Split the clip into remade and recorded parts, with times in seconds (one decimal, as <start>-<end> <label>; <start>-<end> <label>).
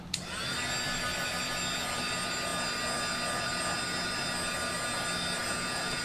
0.0-5.4 recorded; 5.4-6.0 remade